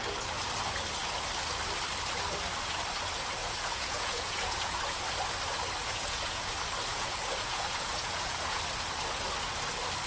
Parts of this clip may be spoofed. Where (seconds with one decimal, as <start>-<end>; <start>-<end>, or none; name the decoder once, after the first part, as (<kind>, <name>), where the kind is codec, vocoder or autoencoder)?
3.4-5.0 (vocoder, Vocos); 5.8-6.5; 6.9-8.6